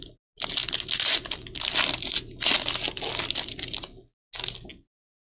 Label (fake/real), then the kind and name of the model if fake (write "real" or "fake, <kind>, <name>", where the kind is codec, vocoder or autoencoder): real